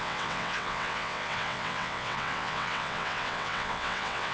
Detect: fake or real fake